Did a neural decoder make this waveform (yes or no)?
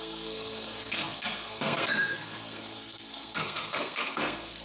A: yes